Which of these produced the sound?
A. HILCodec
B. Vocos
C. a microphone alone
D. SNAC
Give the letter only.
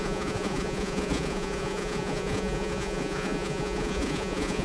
B